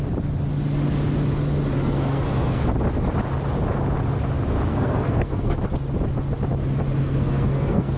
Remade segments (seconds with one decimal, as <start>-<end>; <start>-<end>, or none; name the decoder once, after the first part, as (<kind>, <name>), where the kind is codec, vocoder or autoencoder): 1.8-2.7 (codec, SNAC); 4.7-5.6; 7.0-8.0